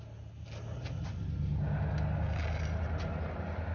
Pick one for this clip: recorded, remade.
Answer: recorded